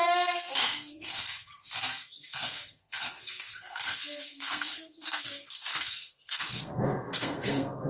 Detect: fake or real fake